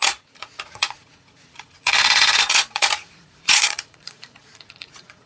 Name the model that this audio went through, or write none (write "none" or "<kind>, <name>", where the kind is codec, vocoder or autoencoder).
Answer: vocoder, Vocos